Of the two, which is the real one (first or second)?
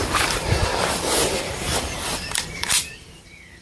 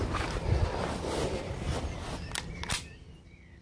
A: second